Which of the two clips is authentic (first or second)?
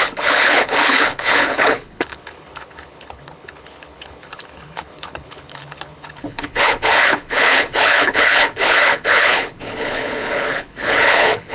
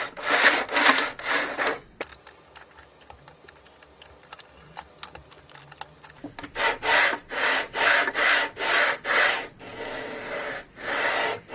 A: second